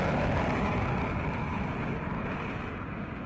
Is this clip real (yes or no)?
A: yes